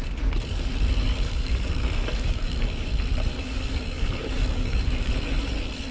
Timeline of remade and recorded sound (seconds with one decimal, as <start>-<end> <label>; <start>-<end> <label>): 0.0-1.1 recorded; 1.1-2.9 remade; 2.9-3.3 recorded; 3.3-5.1 remade; 5.1-5.9 recorded

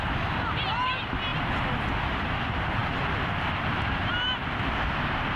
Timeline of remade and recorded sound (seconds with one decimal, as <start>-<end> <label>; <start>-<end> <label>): 0.0-5.4 recorded